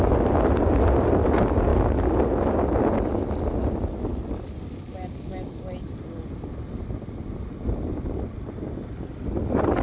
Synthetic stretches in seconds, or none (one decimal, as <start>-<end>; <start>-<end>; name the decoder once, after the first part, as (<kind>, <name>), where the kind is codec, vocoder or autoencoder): none